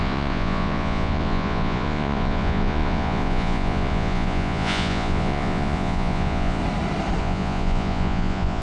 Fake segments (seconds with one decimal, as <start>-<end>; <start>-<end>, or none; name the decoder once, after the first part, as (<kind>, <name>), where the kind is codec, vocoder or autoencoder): 0.0-6.6 (vocoder, Vocos); 7.2-8.6

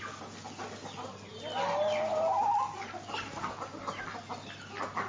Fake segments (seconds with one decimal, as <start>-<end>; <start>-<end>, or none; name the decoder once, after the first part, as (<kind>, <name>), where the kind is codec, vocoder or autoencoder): none

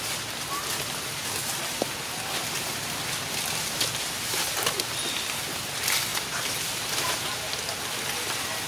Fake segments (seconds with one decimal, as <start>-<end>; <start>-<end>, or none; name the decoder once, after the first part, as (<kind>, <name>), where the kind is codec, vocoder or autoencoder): 0.6-1.9 (vocoder, BigVGAN v2); 6.1-7.4

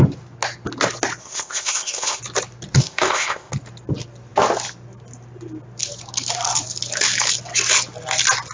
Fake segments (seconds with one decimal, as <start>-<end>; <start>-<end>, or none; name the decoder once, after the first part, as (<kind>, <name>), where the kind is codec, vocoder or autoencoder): 1.2-2.2 (codec, ZipCodec); 2.8-3.5

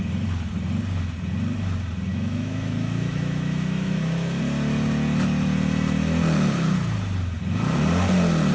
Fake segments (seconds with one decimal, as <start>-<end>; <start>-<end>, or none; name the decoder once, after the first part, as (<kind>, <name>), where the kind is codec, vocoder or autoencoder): 2.1-4.4 (autoencoder, DAC-VAE)

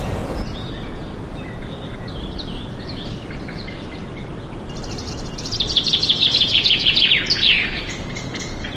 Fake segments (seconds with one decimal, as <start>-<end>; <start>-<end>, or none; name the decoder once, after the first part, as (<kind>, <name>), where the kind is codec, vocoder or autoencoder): 0.0-1.1 (vocoder, Vocos); 5.1-8.8

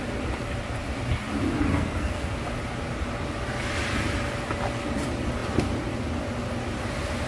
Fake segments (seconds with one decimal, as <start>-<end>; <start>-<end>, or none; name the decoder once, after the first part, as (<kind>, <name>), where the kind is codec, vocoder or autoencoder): 1.7-2.4 (codec, SNAC)